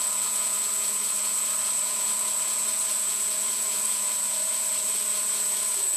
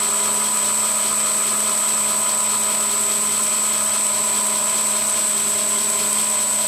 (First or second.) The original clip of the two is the second